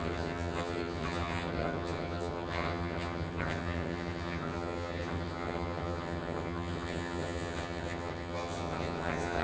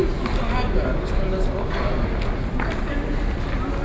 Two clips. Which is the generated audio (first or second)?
first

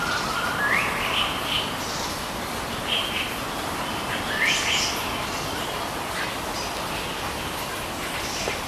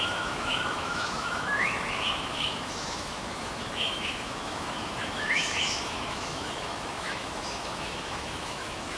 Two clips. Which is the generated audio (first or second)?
second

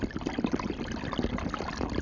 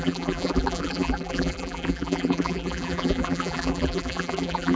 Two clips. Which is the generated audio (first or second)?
second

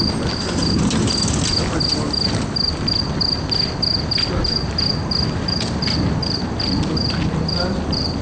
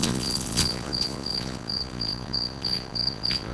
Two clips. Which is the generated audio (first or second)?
second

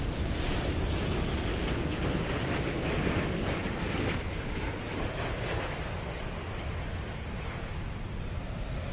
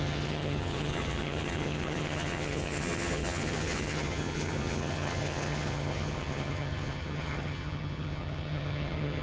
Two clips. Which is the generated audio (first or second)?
second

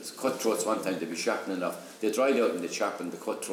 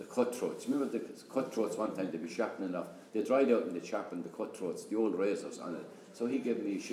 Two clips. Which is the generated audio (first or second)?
second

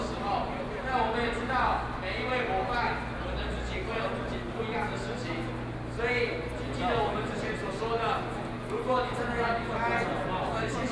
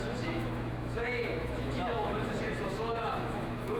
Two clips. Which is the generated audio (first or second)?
second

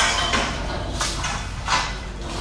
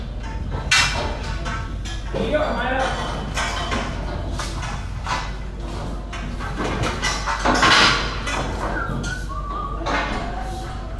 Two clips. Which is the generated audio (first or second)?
first